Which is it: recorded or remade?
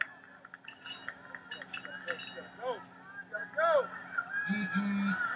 recorded